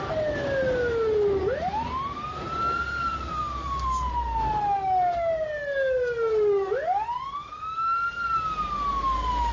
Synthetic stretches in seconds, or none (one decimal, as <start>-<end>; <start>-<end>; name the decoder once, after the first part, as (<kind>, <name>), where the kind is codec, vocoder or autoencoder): 3.1-4.1 (vocoder, BigVGAN v2)